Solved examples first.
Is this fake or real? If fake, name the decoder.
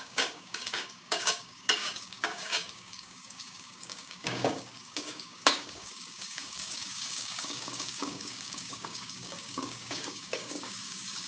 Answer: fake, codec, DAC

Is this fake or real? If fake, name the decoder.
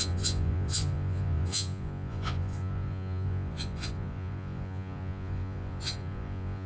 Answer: fake, vocoder, Vocos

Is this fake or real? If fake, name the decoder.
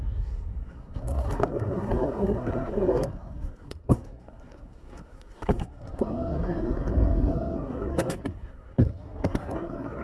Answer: fake, codec, SNAC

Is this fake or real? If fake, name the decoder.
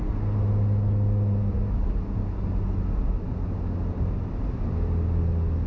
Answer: real